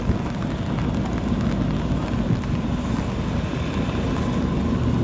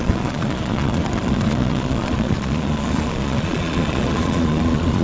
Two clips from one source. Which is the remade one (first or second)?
second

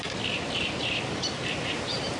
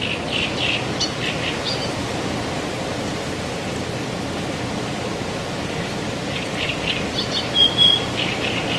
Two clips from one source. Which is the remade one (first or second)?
first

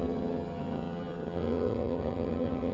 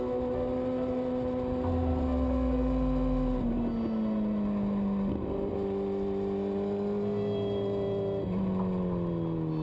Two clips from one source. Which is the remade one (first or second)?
first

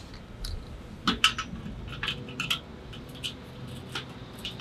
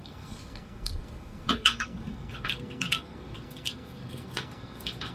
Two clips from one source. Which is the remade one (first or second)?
second